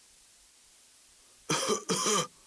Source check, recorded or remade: recorded